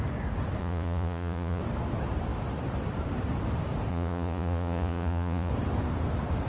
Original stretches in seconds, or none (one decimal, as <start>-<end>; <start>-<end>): 0.0-0.6; 1.6-3.9; 5.5-6.5

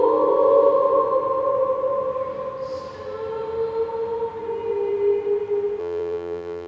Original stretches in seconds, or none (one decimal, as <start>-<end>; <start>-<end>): 0.0-5.8

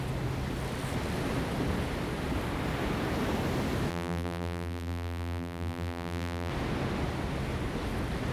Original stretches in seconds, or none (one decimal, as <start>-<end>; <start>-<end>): 0.0-3.9; 6.5-8.3

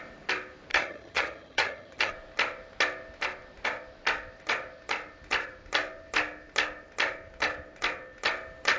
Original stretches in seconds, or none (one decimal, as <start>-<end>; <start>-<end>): 0.0-0.7; 2.1-8.8